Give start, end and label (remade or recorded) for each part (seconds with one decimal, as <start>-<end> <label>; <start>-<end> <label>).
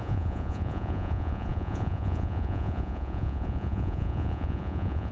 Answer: 0.0-5.1 remade